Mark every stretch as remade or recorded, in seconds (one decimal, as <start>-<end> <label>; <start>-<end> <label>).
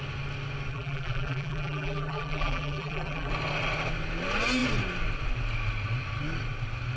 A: 0.0-0.7 recorded; 0.7-3.3 remade; 3.3-7.0 recorded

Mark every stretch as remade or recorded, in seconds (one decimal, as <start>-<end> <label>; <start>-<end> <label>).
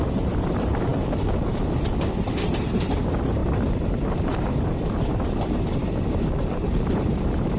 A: 0.0-0.9 remade; 0.9-2.3 recorded; 2.3-5.8 remade; 5.8-6.4 recorded; 6.4-7.6 remade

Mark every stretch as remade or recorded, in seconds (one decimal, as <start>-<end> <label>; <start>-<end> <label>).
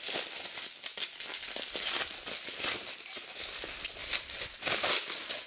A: 0.0-0.9 recorded; 0.9-2.1 remade; 2.1-4.0 recorded; 4.0-5.1 remade; 5.1-5.5 recorded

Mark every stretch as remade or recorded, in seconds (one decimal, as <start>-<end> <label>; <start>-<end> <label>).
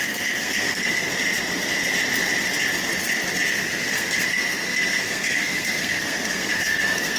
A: 0.0-1.1 remade; 1.1-3.6 recorded; 3.6-7.2 remade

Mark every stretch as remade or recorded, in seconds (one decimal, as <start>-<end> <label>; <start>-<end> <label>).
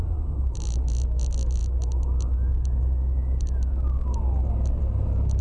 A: 0.0-5.4 recorded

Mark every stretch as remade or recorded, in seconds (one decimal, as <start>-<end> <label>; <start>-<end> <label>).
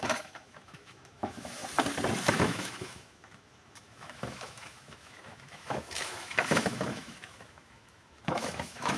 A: 0.0-1.6 remade; 1.6-2.3 recorded; 2.3-9.0 remade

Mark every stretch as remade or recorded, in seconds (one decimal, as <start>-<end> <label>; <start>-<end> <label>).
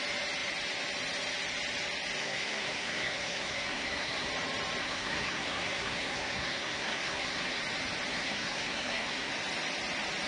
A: 0.0-2.2 recorded; 2.2-4.3 remade; 4.3-4.8 recorded; 4.8-7.6 remade; 7.6-8.1 recorded; 8.1-9.3 remade; 9.3-10.3 recorded